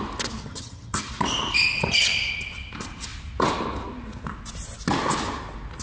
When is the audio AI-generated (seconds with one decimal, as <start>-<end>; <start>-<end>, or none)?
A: 0.5-1.1